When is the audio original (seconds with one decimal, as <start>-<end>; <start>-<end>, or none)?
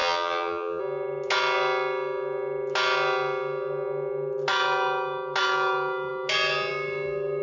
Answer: 0.8-7.4